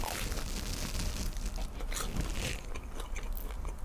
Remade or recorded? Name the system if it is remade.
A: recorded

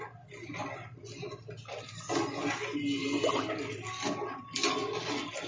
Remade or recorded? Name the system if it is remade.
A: recorded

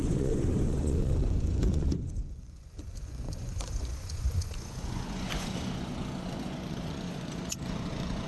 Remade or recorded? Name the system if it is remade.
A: remade, vocoder, Vocos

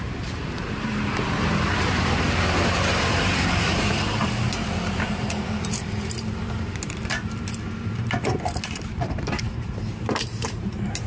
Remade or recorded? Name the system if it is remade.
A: remade, vocoder, BigVGAN v2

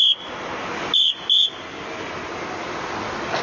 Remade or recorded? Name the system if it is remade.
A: recorded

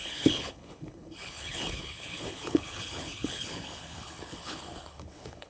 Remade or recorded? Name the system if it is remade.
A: remade, codec, HILCodec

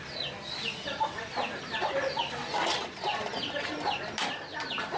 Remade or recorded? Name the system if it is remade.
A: recorded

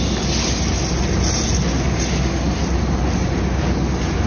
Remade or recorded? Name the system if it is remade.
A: recorded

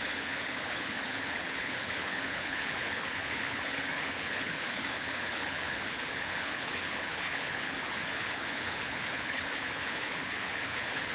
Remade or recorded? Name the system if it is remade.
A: remade, codec, HILCodec